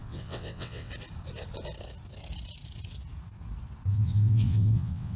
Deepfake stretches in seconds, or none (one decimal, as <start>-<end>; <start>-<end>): 0.0-0.9; 3.9-5.2